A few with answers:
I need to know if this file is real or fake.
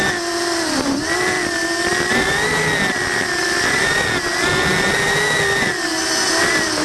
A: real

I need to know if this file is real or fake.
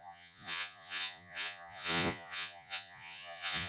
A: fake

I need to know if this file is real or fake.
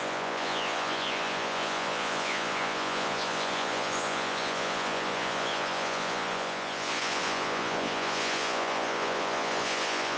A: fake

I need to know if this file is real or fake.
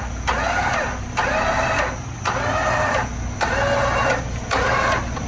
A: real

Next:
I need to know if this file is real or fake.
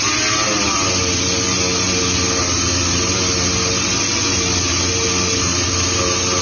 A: real